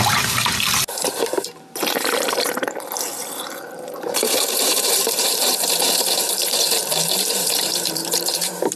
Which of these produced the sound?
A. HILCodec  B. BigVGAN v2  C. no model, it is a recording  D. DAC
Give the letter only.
B